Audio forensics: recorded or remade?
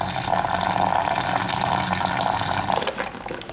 recorded